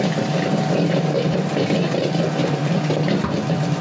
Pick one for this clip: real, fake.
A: real